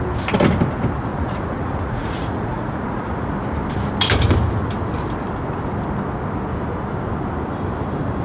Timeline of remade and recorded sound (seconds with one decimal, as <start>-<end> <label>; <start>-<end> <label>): 0.0-1.1 recorded; 1.1-3.3 remade; 3.3-8.2 recorded